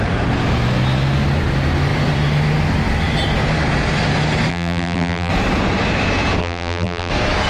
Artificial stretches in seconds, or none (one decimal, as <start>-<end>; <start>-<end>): 4.5-5.3; 6.4-7.1